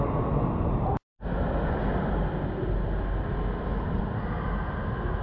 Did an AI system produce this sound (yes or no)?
no